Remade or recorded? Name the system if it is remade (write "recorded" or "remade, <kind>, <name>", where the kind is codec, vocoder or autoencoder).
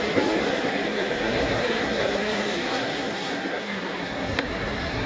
remade, codec, SNAC